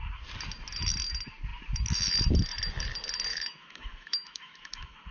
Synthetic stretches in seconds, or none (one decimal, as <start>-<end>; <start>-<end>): 3.3-5.1